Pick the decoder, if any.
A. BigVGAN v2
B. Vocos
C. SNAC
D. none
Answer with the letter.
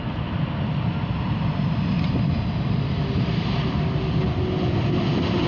D